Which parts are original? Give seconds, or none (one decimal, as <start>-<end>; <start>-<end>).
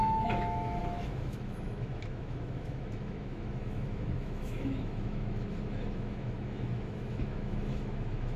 none